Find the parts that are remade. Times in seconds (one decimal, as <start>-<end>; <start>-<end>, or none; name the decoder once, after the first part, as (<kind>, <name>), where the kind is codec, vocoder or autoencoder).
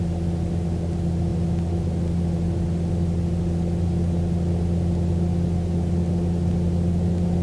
none